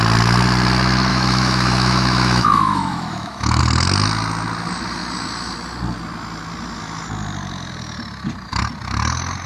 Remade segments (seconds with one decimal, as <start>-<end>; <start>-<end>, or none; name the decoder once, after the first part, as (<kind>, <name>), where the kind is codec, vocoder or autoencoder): 1.1-3.6 (autoencoder, DAC-VAE)